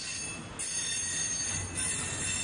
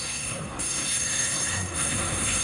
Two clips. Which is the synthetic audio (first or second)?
second